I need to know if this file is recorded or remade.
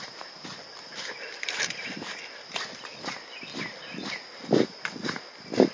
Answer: recorded